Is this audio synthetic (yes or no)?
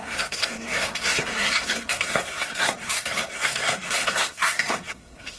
yes